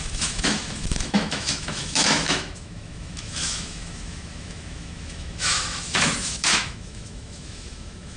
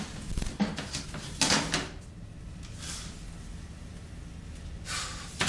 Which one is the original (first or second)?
second